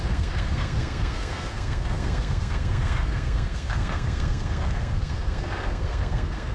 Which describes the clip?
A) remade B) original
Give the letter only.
A